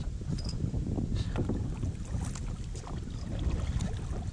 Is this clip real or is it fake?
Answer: real